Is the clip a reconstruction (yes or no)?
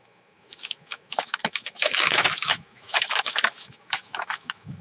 yes